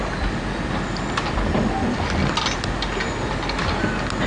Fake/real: real